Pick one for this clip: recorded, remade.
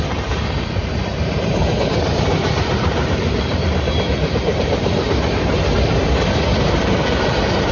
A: remade